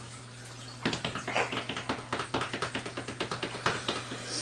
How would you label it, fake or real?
real